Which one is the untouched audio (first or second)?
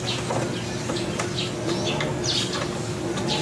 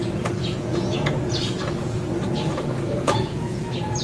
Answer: first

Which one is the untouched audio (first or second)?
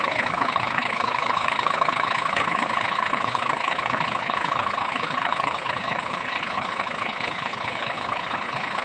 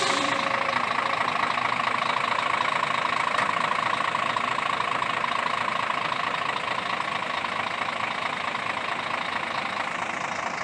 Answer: second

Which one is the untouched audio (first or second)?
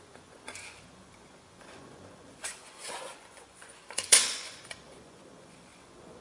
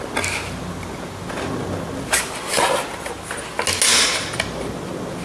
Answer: second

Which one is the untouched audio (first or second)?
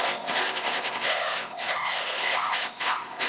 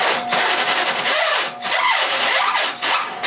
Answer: second